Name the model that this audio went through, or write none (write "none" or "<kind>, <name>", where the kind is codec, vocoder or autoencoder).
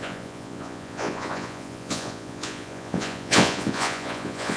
vocoder, Vocos